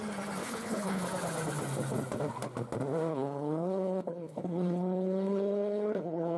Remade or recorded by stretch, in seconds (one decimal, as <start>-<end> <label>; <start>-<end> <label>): 0.0-0.4 recorded; 0.4-1.0 remade; 1.0-3.1 recorded; 3.1-6.4 remade

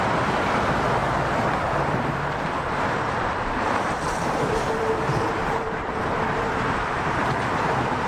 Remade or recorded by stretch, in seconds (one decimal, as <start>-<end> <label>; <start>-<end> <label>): 0.0-1.0 recorded; 1.0-4.5 remade; 4.5-5.4 recorded; 5.4-8.1 remade

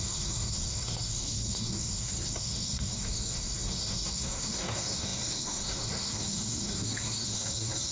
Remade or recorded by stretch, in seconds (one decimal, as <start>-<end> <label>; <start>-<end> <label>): 0.0-7.9 remade

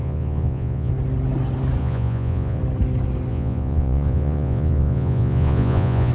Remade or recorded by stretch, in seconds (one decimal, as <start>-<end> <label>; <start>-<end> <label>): 0.0-0.9 remade; 0.9-1.8 recorded; 1.8-2.6 remade; 2.6-3.3 recorded; 3.3-6.1 remade

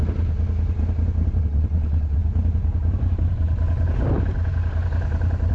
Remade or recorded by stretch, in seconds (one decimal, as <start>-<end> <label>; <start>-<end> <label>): 0.0-1.4 recorded; 1.4-2.2 remade; 2.2-5.5 recorded

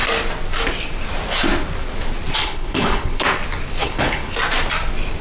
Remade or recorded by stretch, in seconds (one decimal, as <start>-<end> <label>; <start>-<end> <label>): 0.0-2.4 recorded; 2.4-3.2 remade; 3.2-3.8 recorded; 3.8-4.3 remade; 4.3-5.2 recorded

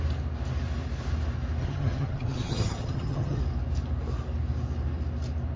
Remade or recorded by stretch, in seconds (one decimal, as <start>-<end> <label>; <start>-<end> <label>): 0.0-1.6 recorded; 1.6-3.4 remade; 3.4-5.6 recorded

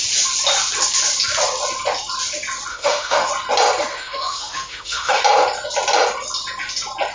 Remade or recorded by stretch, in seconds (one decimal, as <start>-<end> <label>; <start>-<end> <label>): 0.0-2.7 recorded; 2.7-3.3 remade; 3.3-3.9 recorded; 3.9-5.2 remade; 5.2-7.1 recorded